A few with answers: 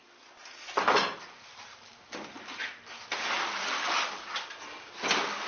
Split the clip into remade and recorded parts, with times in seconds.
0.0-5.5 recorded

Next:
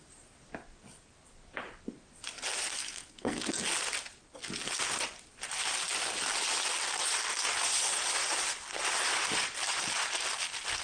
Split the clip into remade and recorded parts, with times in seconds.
0.0-2.8 recorded; 2.8-3.6 remade; 3.6-10.8 recorded

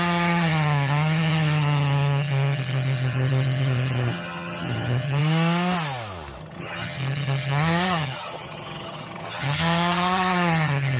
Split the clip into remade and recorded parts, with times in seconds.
0.0-5.2 remade; 5.2-6.4 recorded; 6.4-11.0 remade